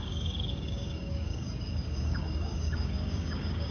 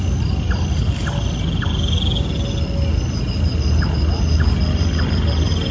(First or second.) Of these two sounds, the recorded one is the second